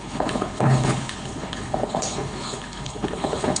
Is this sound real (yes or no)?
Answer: no